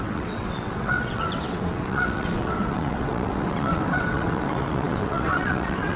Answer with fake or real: fake